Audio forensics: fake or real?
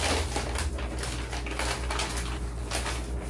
real